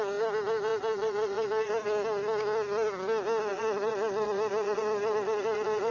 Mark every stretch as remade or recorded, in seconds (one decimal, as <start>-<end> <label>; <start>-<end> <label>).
0.0-0.7 recorded; 0.7-1.7 remade; 1.7-3.5 recorded; 3.5-5.9 remade